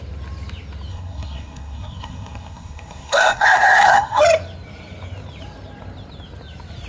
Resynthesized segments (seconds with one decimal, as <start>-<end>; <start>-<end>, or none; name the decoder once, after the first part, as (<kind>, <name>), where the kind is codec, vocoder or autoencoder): 0.9-4.2 (codec, SNAC)

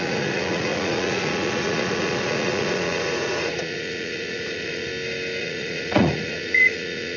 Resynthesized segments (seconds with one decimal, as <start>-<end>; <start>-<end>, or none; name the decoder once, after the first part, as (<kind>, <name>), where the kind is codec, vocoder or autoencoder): 0.0-4.9 (vocoder, Vocos); 5.4-7.2

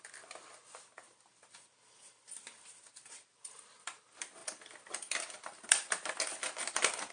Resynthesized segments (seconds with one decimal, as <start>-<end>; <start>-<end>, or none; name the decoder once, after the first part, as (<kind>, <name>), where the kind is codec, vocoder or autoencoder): 0.0-7.1 (vocoder, BigVGAN v2)

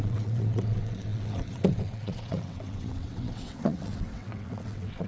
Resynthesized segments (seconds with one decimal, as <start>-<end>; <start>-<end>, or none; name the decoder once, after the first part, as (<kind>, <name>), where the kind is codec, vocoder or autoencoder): 0.0-5.1 (vocoder, WaveNeXt)

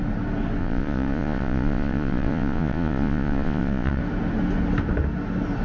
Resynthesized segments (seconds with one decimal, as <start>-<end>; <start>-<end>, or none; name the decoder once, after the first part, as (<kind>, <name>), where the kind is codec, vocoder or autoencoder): 0.6-4.0 (vocoder, Vocos)